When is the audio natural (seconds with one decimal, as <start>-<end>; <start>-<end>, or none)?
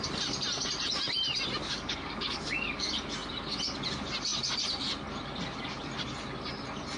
0.0-1.6; 2.9-7.0